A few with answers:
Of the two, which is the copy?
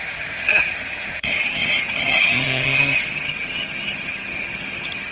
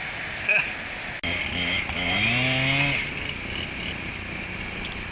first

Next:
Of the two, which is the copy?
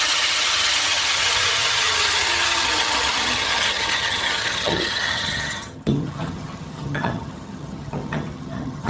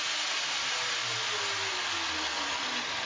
first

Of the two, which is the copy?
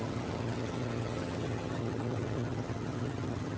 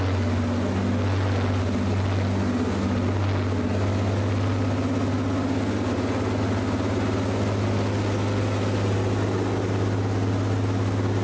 first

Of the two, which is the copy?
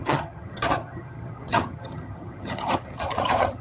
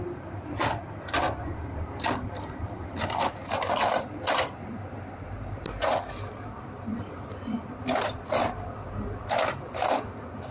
first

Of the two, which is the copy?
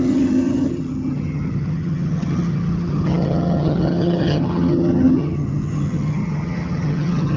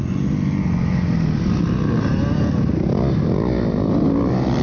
first